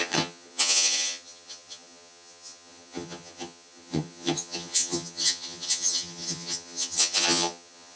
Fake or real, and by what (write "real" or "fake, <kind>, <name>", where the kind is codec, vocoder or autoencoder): fake, vocoder, HiFi-GAN